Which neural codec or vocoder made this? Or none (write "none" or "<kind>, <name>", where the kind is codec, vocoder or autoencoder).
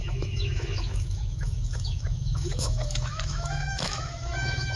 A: autoencoder, DAC-VAE